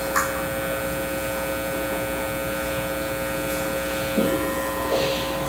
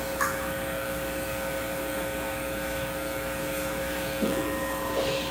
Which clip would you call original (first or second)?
first